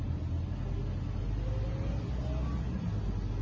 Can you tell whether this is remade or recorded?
recorded